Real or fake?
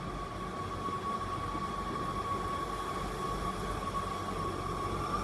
real